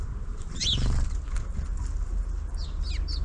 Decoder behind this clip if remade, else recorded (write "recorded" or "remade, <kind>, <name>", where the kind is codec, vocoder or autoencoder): recorded